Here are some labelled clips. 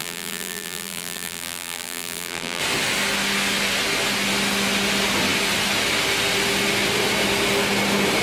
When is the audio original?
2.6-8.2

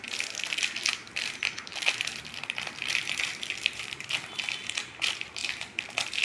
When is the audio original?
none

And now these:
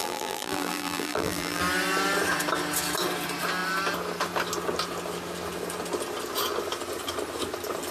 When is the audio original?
1.6-7.9

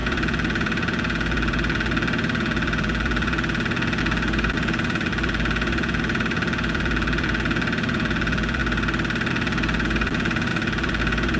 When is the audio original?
8.6-9.3

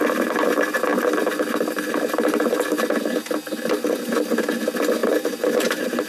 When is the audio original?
0.0-5.0